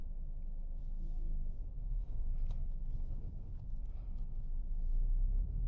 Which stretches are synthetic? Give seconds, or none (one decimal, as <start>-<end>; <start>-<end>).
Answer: 1.8-2.3

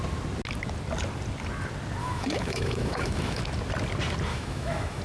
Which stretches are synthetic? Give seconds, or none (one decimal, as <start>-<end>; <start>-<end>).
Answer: 2.0-3.4; 4.3-5.0

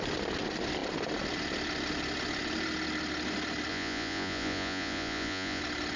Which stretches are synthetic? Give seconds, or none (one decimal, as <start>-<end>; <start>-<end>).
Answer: 3.7-5.6

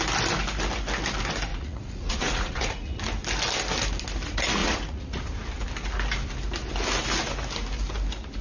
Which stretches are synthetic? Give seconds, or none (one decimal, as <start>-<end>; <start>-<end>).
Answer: 1.5-3.0; 4.6-5.2